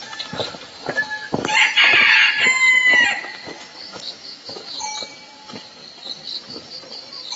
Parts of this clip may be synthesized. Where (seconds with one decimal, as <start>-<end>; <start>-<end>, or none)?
1.0-1.6; 3.9-4.8